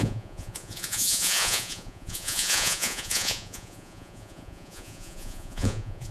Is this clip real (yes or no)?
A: no